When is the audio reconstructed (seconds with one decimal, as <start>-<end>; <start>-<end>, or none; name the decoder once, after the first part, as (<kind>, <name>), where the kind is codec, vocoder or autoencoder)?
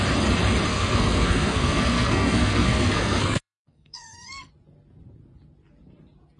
0.7-4.5 (codec, SNAC)